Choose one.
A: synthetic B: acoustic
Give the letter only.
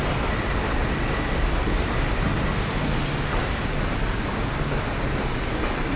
B